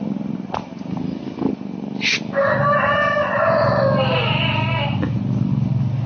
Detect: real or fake real